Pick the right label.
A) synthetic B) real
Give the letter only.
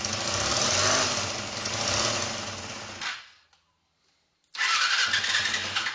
B